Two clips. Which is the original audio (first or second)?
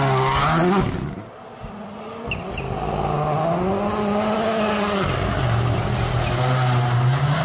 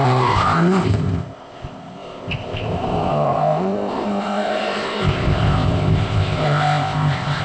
first